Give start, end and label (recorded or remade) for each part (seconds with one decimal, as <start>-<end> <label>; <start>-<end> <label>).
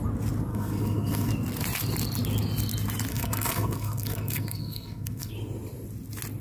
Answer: 0.0-0.5 recorded; 0.5-1.3 remade; 1.3-3.1 recorded; 3.1-5.3 remade; 5.3-6.4 recorded